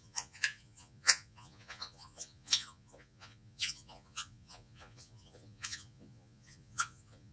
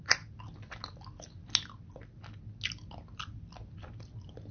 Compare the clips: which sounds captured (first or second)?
second